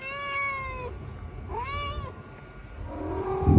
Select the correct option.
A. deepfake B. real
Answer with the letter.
B